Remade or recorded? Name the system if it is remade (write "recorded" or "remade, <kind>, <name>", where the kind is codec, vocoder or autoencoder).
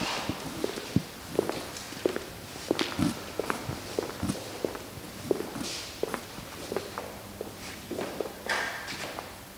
remade, vocoder, BigVGAN v2